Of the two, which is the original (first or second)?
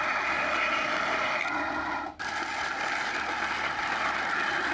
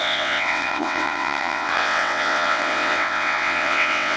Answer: first